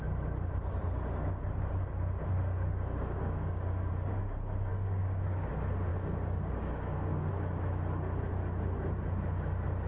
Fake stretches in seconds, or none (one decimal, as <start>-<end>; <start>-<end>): 2.3-3.9; 4.7-5.5; 5.9-7.3